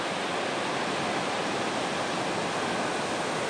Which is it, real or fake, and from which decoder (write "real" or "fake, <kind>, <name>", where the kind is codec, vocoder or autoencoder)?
real